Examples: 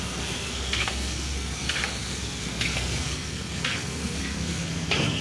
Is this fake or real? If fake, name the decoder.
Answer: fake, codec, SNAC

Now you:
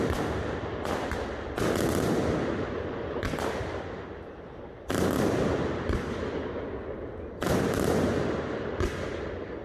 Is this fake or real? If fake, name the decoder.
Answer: real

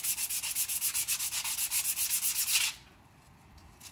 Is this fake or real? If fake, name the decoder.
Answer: real